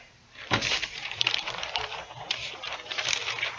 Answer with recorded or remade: remade